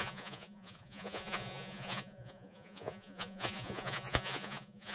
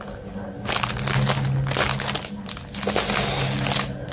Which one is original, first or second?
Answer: second